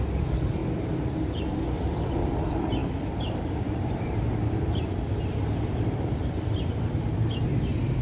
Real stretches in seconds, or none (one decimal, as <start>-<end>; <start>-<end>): none